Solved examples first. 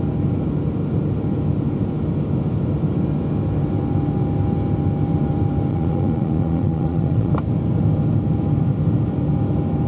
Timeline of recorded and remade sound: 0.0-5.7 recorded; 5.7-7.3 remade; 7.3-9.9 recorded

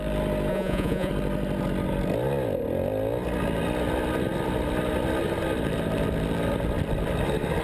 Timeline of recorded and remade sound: 0.0-0.5 recorded; 0.5-1.1 remade; 1.1-7.6 recorded

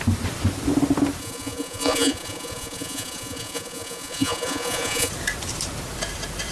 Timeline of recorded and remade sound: 0.0-1.2 recorded; 1.2-5.1 remade; 5.1-6.5 recorded

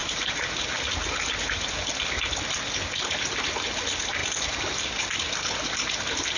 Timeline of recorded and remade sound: 0.0-6.4 recorded